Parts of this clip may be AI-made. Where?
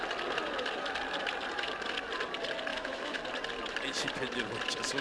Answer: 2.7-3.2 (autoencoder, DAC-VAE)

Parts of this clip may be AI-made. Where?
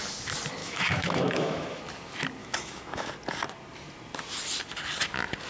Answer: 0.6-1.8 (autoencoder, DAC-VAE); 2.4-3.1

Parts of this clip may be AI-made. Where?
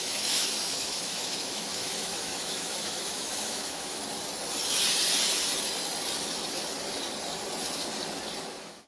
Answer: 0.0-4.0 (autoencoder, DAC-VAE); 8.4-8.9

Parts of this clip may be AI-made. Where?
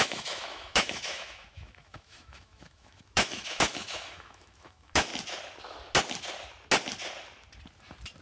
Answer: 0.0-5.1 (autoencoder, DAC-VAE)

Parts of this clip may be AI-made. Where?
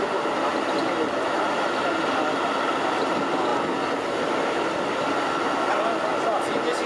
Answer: none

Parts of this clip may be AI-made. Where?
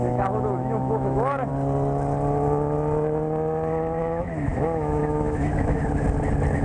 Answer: 0.0-1.5 (autoencoder, DAC-VAE); 4.0-5.8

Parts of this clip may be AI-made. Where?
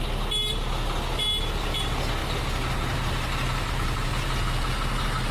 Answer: none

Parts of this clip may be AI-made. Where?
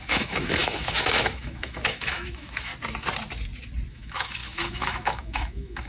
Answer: 0.0-2.7 (autoencoder, DAC-VAE); 3.9-5.9